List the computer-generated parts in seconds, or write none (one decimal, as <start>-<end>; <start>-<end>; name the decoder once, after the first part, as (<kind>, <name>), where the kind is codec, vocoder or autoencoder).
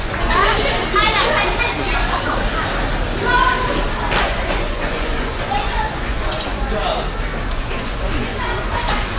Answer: 0.0-0.8 (vocoder, Vocos); 4.2-6.8; 7.4-9.2